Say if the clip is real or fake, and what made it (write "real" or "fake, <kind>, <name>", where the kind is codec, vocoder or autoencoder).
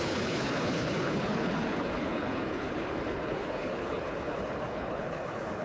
fake, codec, HILCodec